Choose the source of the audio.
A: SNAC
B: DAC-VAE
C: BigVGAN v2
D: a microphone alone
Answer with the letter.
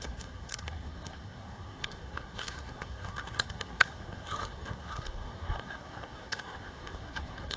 A